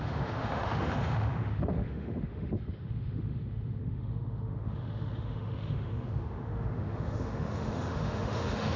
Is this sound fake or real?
fake